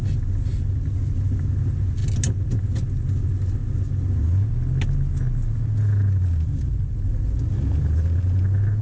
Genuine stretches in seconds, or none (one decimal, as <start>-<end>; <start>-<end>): 0.0-8.8